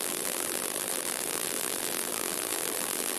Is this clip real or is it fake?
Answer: fake